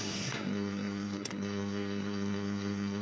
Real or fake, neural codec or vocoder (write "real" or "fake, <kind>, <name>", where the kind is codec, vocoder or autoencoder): fake, codec, SNAC